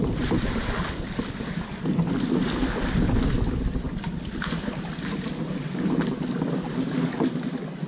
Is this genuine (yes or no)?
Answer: no